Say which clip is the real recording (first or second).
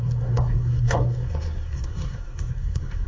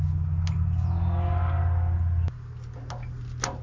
second